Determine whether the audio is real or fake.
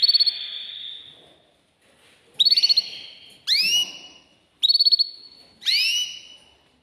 real